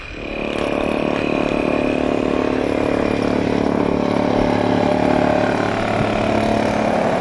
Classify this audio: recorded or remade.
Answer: recorded